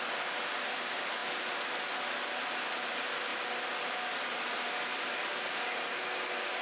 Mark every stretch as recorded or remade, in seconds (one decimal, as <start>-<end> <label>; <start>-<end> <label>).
0.0-6.6 recorded